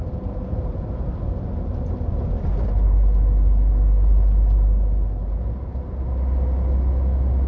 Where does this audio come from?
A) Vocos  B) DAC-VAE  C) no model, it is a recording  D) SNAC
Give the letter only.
C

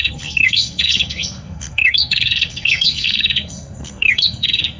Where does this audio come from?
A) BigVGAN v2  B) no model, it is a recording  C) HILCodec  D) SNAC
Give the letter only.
D